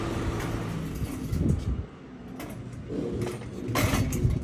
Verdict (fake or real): real